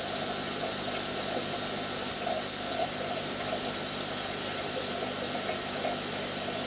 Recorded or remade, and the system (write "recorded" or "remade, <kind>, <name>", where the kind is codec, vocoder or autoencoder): recorded